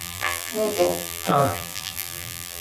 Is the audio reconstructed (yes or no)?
yes